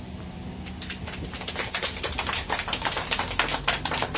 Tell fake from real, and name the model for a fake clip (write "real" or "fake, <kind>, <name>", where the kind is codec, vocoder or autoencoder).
real